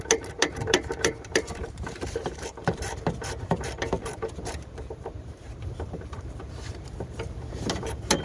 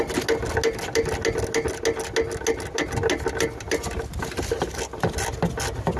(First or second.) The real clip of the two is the second